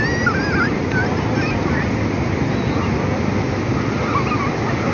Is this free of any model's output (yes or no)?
yes